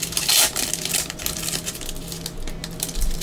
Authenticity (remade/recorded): recorded